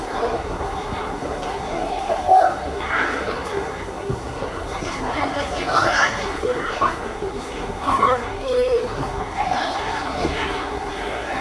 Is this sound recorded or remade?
remade